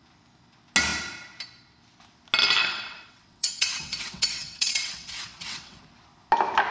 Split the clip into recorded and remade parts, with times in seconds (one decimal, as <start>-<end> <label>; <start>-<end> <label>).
0.0-2.6 recorded; 2.6-5.8 remade; 5.8-6.7 recorded

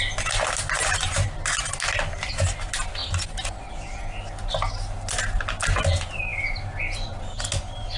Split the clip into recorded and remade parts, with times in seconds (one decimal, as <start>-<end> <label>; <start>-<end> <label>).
0.0-8.0 recorded

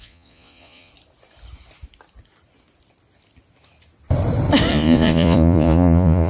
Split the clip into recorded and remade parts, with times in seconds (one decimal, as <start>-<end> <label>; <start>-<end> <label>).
0.0-0.9 remade; 0.9-4.7 recorded; 4.7-6.3 remade

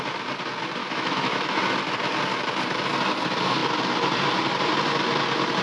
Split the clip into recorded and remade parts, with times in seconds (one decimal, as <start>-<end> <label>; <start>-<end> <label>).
0.0-0.8 recorded; 0.8-1.6 remade; 1.6-5.6 recorded

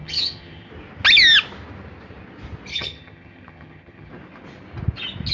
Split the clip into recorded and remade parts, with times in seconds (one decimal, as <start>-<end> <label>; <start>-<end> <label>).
0.0-0.7 remade; 0.7-2.7 recorded; 2.7-4.1 remade; 4.1-5.3 recorded

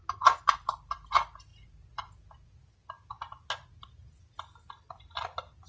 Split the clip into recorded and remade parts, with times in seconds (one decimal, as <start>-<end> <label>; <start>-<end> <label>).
0.0-5.7 recorded

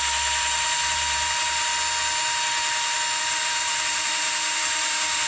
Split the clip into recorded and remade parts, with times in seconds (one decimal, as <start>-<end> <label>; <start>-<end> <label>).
0.0-1.7 remade; 1.7-3.2 recorded; 3.2-5.3 remade

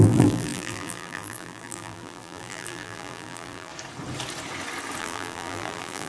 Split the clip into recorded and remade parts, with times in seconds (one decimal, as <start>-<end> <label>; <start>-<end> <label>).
0.0-3.7 remade; 3.7-5.0 recorded; 5.0-6.1 remade